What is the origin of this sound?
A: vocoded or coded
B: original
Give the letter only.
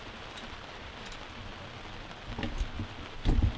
B